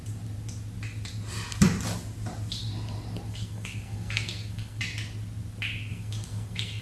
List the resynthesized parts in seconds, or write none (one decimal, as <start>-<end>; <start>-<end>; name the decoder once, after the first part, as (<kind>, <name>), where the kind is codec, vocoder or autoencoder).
3.3-4.8 (codec, SNAC); 5.9-6.8